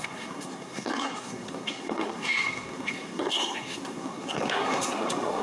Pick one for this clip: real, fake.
fake